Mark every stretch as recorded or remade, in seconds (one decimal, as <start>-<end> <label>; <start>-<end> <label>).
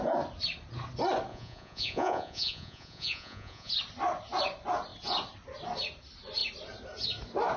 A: 0.0-1.3 recorded; 1.3-3.7 remade; 3.7-7.6 recorded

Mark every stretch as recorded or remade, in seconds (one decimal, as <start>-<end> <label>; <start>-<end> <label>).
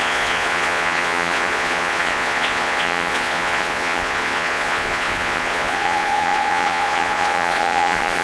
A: 0.0-8.2 remade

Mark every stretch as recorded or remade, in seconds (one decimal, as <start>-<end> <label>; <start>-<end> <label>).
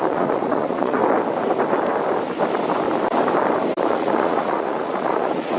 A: 0.0-1.0 remade; 1.0-3.9 recorded; 3.9-5.6 remade